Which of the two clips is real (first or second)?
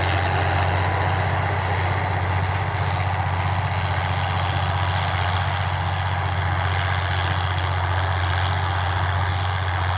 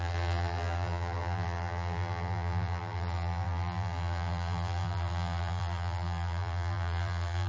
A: first